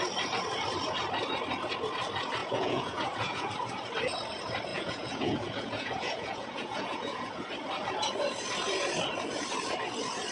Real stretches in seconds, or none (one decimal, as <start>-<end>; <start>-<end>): 0.0-2.4; 3.5-4.7; 7.5-10.3